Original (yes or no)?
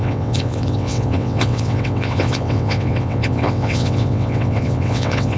no